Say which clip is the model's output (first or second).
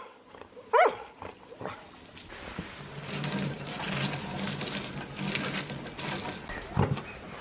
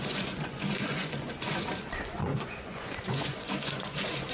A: second